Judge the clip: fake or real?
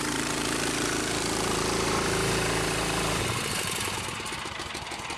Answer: fake